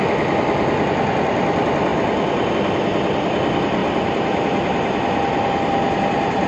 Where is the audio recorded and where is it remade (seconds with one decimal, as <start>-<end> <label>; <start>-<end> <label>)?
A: 0.0-3.8 recorded; 3.8-6.5 remade